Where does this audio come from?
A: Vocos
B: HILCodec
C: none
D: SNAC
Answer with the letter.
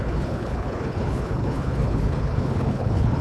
B